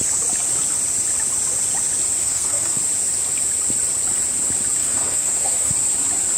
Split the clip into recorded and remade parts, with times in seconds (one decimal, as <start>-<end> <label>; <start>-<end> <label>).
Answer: 0.0-2.2 recorded; 2.2-2.8 remade; 2.8-4.8 recorded; 4.8-5.7 remade; 5.7-6.4 recorded